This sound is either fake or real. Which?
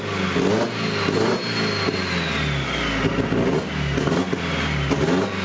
real